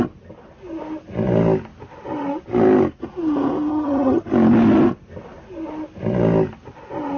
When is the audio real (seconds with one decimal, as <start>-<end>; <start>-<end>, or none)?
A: 0.0-3.7; 4.2-7.2